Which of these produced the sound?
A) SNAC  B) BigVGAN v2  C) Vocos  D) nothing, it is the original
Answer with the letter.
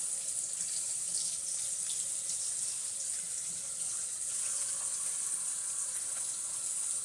D